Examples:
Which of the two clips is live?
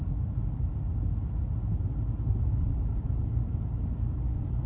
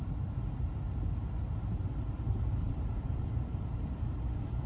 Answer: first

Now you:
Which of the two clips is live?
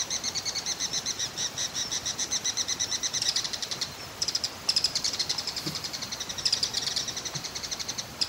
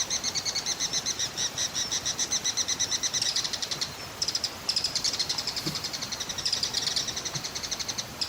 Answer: second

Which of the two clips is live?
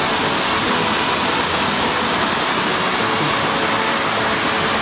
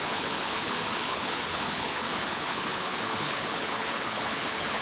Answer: first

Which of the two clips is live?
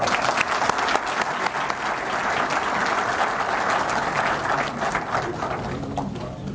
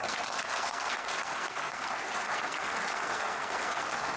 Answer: first